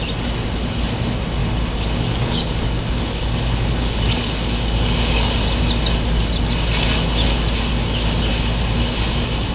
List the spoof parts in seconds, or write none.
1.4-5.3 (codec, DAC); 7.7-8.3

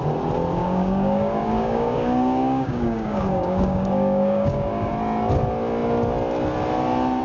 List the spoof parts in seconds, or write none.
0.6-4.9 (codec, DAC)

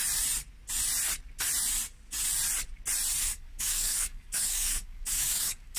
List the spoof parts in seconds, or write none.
3.2-5.8 (codec, DAC)